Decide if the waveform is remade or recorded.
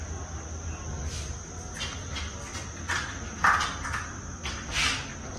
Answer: recorded